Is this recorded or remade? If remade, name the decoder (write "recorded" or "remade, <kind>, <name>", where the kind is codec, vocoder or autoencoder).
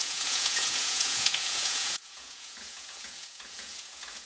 remade, vocoder, Vocos